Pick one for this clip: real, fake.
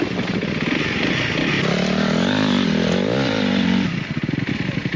real